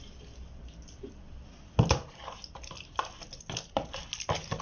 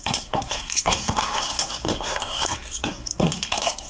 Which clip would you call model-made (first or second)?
second